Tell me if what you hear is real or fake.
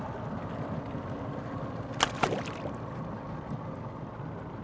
real